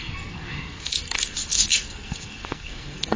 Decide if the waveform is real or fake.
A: fake